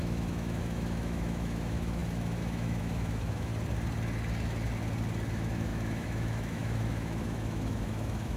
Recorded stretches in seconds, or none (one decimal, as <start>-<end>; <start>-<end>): 3.5-5.3